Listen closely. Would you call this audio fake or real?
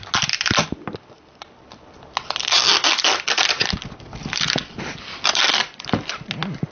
real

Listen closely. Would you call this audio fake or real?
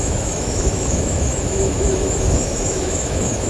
fake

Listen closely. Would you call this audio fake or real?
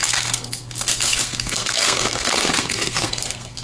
fake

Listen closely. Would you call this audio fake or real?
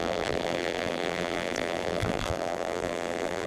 fake